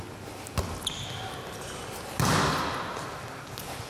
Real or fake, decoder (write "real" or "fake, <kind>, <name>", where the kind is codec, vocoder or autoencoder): real